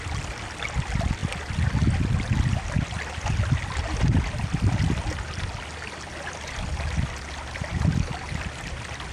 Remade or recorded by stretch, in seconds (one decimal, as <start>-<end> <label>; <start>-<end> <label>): 0.0-9.1 recorded